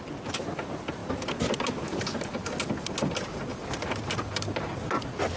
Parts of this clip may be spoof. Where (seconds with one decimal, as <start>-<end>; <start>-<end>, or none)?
3.5-5.0